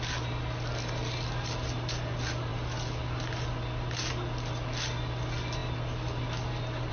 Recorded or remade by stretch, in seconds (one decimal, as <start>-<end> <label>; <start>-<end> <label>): 0.0-6.9 recorded